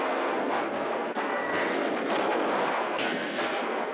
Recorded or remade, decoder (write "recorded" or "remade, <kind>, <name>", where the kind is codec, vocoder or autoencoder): remade, codec, SNAC